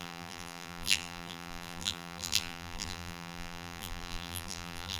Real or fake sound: fake